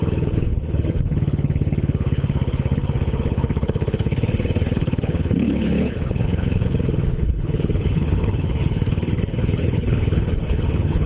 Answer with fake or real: fake